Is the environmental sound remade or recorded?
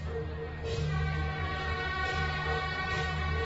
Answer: recorded